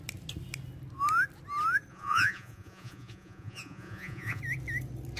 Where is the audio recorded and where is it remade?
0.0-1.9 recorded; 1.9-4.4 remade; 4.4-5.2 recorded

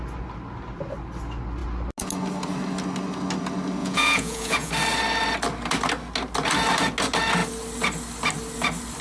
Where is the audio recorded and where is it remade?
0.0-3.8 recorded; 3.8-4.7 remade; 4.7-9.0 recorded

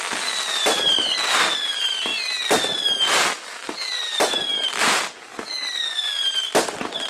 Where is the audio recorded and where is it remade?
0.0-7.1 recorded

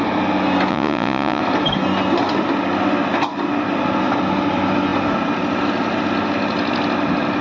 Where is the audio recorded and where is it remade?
0.0-0.7 recorded; 0.7-1.4 remade; 1.4-7.4 recorded

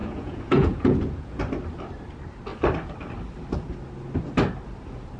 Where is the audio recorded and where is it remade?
0.0-1.4 remade; 1.4-5.2 recorded

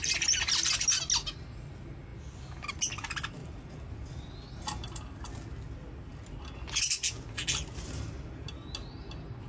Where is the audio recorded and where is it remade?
0.0-9.5 recorded

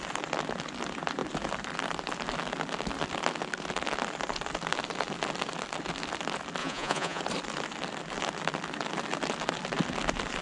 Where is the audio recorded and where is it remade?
0.0-6.6 recorded; 6.6-7.2 remade; 7.2-10.4 recorded